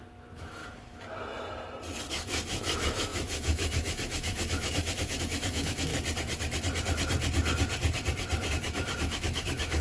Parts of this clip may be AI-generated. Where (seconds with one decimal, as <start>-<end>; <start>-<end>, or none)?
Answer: 0.0-0.6; 2.1-5.9; 8.5-9.8